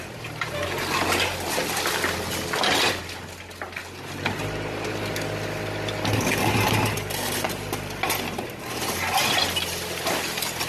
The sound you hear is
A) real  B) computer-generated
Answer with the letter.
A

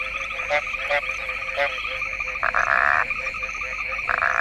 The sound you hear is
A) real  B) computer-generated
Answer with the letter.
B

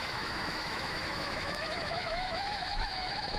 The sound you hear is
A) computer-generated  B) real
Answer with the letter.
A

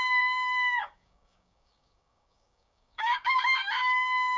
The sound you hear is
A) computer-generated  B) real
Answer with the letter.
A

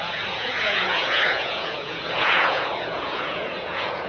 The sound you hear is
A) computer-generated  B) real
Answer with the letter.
A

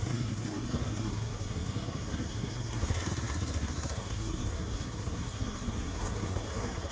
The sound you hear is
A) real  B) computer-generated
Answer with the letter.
B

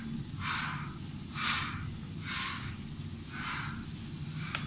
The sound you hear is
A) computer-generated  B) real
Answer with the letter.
B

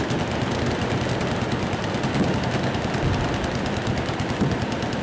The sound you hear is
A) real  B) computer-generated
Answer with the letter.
A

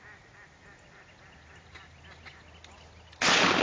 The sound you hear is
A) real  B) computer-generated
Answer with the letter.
A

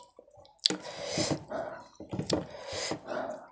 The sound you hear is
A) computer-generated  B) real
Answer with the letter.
B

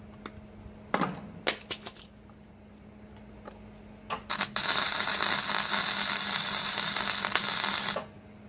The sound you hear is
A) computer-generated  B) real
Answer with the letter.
B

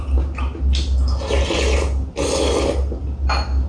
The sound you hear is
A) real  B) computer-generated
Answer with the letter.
A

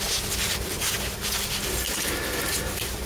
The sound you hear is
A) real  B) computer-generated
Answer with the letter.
A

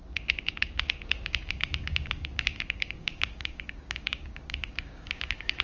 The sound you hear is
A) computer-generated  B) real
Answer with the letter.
A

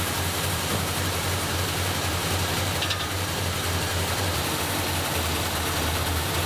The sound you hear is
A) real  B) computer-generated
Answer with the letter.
B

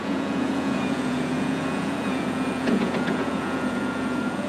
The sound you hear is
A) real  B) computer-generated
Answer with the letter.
B